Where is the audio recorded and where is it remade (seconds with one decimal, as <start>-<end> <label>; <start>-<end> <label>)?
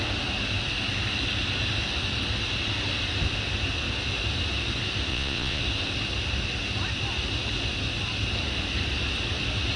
0.0-5.1 recorded; 5.1-5.6 remade; 5.6-9.8 recorded